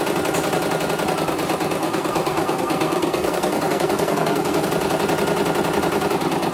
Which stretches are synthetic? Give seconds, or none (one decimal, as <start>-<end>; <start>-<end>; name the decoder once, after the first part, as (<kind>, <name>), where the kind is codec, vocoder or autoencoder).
1.8-4.7 (codec, SNAC)